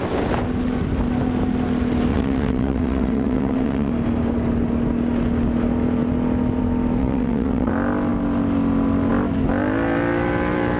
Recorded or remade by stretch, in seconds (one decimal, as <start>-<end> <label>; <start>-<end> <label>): 0.0-2.1 recorded; 2.1-3.9 remade; 3.9-7.0 recorded; 7.0-7.7 remade; 7.7-10.8 recorded

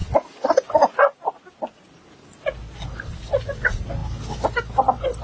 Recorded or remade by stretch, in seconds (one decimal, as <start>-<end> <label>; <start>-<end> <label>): 0.0-5.2 recorded

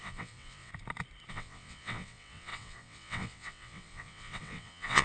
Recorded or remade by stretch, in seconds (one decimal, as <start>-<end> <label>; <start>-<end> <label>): 0.0-0.7 remade; 0.7-1.3 recorded; 1.3-5.0 remade